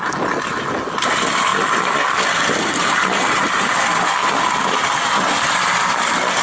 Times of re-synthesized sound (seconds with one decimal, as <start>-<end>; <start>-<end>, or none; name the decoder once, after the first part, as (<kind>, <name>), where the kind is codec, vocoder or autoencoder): none